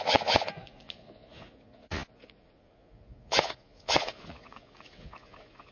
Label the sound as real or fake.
fake